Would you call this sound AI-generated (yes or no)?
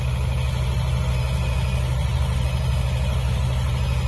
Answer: no